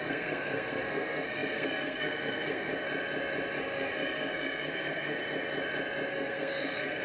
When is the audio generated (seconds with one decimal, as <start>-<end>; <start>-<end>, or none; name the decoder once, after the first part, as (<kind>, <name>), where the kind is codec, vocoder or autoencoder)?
0.0-2.7 (codec, SNAC); 3.6-5.2; 6.1-7.0